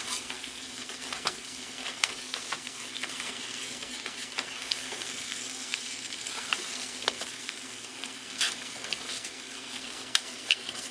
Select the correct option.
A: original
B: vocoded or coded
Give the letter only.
B